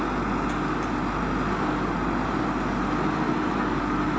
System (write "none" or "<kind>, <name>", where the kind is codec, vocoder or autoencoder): none